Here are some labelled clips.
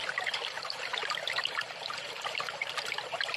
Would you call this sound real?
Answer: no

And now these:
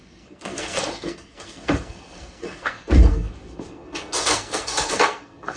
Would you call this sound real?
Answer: no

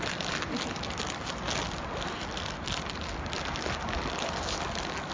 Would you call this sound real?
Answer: yes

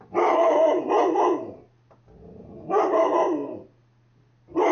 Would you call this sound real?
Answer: yes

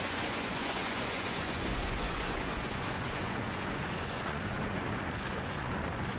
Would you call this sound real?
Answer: no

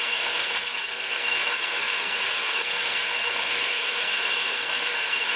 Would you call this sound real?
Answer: no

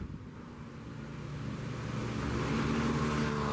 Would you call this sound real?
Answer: yes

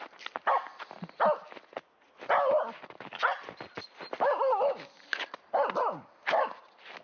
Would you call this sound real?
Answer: yes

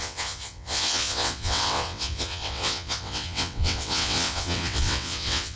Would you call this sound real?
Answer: no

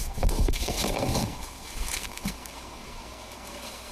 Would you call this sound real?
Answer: no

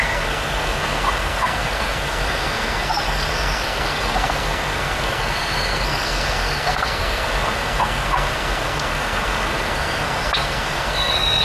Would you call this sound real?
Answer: no